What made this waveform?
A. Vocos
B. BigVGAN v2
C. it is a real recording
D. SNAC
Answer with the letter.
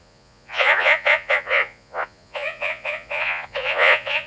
A